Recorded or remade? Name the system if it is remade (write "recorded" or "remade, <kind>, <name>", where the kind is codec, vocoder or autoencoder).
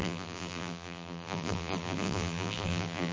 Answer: remade, vocoder, BigVGAN v2